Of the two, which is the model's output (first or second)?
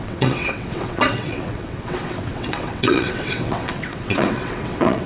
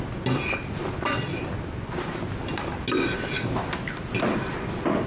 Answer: first